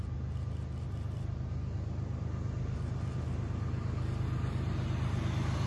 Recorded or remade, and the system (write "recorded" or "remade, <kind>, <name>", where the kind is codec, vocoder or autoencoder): recorded